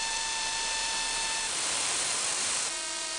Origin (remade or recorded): remade